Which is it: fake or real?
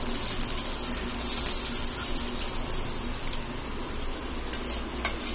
real